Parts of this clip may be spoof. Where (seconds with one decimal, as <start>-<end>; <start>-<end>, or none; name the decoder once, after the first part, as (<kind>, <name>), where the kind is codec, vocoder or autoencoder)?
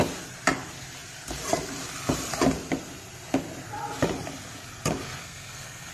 5.2-5.9 (codec, SNAC)